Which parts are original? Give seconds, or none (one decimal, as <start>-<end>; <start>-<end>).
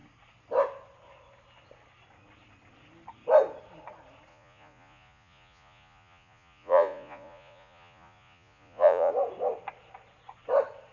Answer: 0.0-4.3; 9.1-10.9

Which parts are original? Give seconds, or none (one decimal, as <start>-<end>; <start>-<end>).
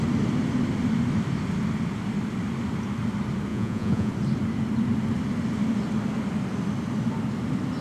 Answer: 0.0-3.5; 4.1-7.8